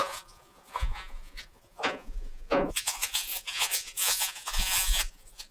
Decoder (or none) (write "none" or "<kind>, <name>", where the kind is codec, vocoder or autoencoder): vocoder, Vocos